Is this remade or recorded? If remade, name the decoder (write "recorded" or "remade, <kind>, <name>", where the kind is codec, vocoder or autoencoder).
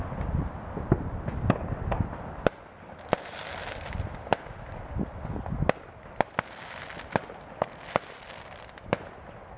recorded